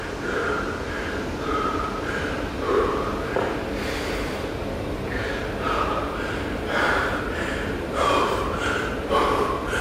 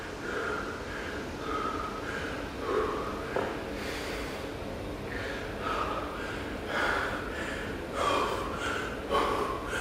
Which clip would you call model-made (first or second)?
first